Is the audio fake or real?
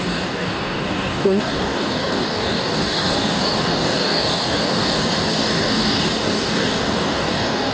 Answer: fake